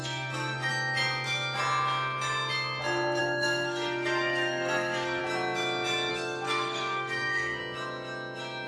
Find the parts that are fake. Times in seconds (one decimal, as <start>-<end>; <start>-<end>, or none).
0.0-0.7; 3.2-5.2; 6.1-7.6